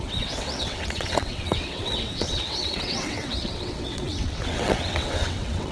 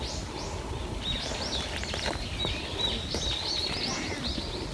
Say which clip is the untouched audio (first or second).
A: second